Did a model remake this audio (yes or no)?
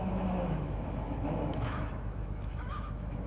yes